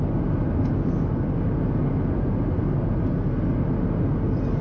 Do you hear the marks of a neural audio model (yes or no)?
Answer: no